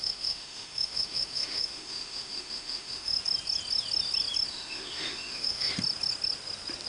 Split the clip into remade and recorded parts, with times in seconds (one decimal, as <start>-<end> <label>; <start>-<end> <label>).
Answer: 0.0-3.1 remade; 3.1-4.5 recorded; 4.5-5.7 remade; 5.7-6.9 recorded